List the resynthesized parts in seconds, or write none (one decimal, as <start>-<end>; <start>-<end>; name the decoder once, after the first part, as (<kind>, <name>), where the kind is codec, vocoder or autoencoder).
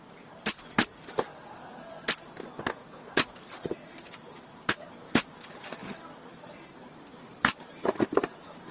0.0-1.3 (vocoder, BigVGAN v2); 3.4-5.8; 6.7-8.7